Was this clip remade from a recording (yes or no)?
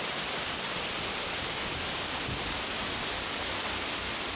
no